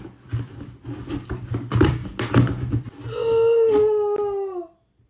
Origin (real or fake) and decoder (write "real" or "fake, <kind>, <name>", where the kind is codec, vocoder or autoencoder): real